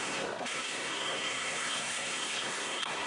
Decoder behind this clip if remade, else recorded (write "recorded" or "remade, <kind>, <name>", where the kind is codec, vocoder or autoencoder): remade, codec, SNAC